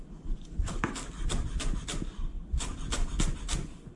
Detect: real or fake real